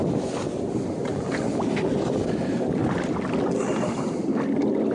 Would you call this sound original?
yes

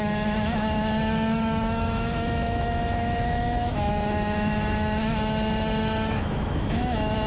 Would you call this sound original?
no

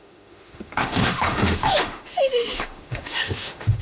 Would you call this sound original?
no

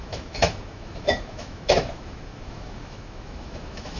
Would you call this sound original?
no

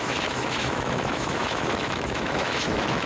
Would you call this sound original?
no